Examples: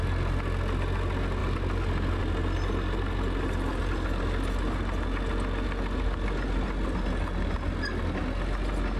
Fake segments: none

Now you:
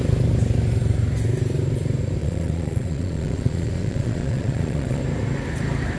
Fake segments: 2.2-5.0 (vocoder, Vocos)